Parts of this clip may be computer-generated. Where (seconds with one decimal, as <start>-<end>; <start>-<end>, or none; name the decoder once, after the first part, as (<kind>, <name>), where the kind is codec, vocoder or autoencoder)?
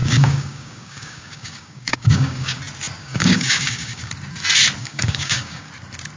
0.0-2.6 (codec, DAC); 3.0-4.1; 4.8-5.7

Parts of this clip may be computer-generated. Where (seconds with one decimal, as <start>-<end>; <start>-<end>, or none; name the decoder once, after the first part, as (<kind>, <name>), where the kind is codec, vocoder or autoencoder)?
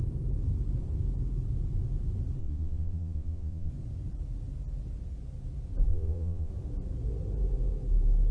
2.4-3.7 (vocoder, Vocos); 5.9-6.5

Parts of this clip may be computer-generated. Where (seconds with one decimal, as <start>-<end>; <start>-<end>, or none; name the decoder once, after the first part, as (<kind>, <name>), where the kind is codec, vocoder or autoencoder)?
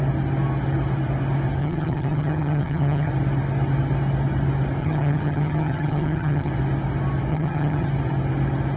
1.6-3.1 (vocoder, HiFi-GAN); 4.8-6.5; 7.3-7.9